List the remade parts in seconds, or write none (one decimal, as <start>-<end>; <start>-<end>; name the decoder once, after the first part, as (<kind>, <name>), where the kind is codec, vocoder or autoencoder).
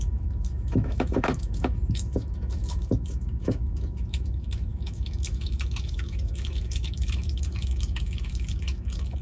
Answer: 0.0-9.2 (autoencoder, DAC-VAE)